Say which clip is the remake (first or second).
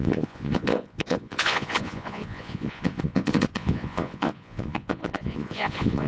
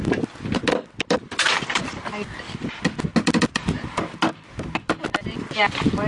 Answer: first